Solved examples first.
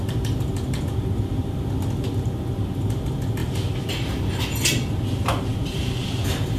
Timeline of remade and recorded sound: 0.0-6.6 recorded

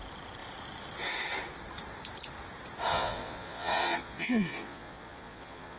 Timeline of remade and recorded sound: 0.0-2.9 recorded; 2.9-5.8 remade